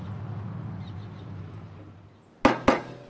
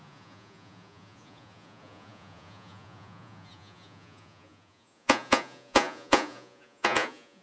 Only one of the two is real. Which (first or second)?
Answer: first